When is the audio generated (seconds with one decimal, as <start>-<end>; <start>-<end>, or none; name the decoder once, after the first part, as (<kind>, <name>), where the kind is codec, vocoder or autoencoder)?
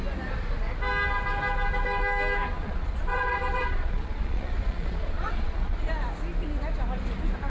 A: 2.6-5.9 (vocoder, Vocos)